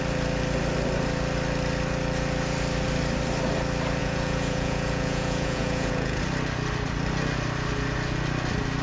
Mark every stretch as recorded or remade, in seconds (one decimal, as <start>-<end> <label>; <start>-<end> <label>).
0.0-4.0 recorded; 4.0-6.2 remade; 6.2-8.8 recorded